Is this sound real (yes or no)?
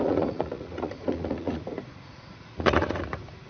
no